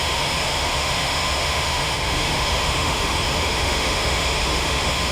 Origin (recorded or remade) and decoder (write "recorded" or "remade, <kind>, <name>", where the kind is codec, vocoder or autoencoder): remade, autoencoder, DAC-VAE